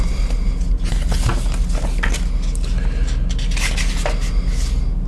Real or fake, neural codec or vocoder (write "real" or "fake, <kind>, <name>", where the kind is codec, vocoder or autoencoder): real